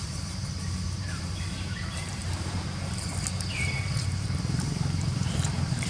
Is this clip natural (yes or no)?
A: no